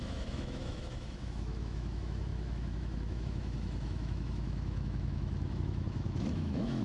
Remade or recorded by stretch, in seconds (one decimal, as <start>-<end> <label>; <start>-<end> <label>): 0.0-6.8 remade